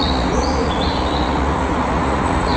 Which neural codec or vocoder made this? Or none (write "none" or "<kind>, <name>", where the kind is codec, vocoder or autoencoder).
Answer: vocoder, Vocos